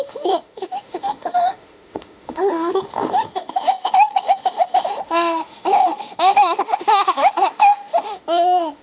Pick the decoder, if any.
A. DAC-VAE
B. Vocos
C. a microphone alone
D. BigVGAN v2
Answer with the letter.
A